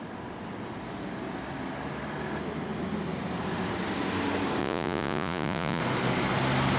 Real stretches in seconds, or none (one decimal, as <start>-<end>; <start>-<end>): 0.0-4.6; 5.8-6.8